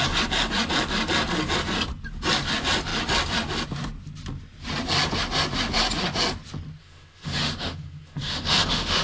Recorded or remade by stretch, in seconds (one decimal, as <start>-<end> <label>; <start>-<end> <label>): 0.0-6.8 recorded; 6.8-9.0 remade